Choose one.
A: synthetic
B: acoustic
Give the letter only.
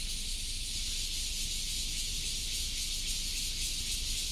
B